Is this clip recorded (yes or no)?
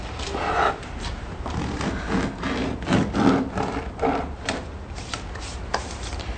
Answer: yes